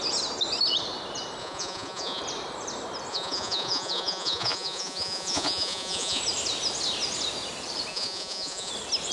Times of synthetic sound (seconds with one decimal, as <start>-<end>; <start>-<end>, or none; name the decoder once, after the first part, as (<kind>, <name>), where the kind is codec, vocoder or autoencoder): 1.4-2.2 (vocoder, Vocos); 3.1-6.2; 7.9-8.7

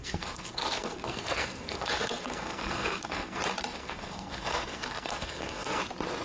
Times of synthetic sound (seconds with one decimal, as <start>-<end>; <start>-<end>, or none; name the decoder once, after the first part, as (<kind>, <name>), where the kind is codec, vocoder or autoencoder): 0.0-3.4 (codec, SNAC); 3.8-5.8

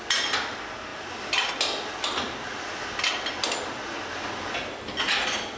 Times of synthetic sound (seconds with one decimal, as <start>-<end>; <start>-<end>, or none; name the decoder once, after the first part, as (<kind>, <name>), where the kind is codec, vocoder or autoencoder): none

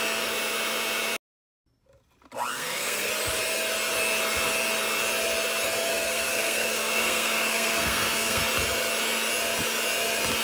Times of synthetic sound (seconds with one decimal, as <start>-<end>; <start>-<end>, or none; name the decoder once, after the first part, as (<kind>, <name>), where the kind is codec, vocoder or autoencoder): 2.5-3.1 (codec, SNAC); 5.9-8.4

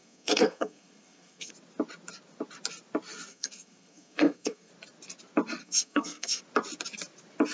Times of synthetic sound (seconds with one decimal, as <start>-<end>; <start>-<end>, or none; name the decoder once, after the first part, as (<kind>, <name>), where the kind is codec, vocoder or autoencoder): 0.0-1.5 (codec, SNAC); 3.3-4.7; 5.6-6.4

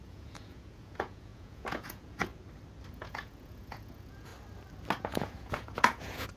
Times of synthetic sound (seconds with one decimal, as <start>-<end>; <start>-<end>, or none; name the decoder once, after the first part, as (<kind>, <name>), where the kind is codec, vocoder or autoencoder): 0.0-2.3 (vocoder, Vocos); 2.9-4.3; 5.0-6.4

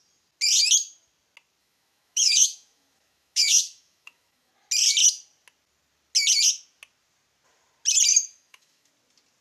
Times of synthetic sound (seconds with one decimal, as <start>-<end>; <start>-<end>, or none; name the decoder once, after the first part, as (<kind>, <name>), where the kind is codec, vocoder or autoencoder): 1.6-4.5 (autoencoder, DAC-VAE); 8.1-8.9

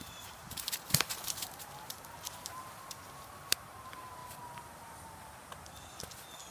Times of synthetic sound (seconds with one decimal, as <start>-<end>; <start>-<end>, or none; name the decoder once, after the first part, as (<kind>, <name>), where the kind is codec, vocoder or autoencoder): 0.0-4.2 (vocoder, BigVGAN v2)